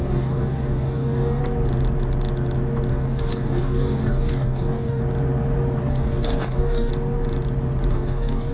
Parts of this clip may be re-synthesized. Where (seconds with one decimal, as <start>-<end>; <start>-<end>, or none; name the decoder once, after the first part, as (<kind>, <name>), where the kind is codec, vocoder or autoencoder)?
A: 0.0-1.4 (codec, DAC); 2.9-5.0; 5.9-6.9; 7.9-8.5